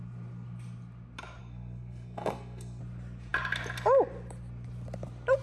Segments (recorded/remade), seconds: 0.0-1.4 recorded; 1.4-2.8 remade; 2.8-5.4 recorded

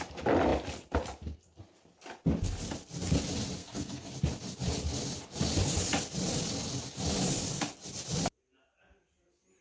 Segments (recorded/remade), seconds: 0.0-3.6 recorded; 3.6-4.1 remade; 4.1-9.6 recorded

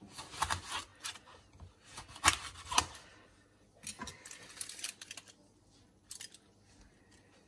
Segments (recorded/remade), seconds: 0.0-7.5 recorded

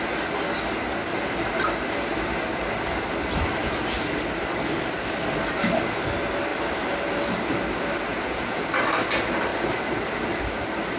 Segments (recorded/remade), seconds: 0.0-8.1 recorded; 8.1-8.6 remade; 8.6-11.0 recorded

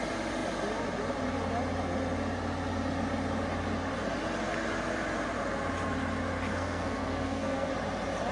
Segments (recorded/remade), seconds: 0.0-6.5 recorded; 6.5-7.7 remade; 7.7-8.3 recorded

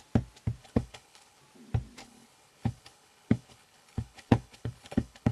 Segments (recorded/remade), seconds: 0.0-0.6 recorded; 0.6-1.4 remade; 1.4-2.0 recorded; 2.0-5.3 remade

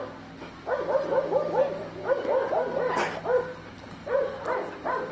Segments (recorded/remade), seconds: 0.0-5.1 recorded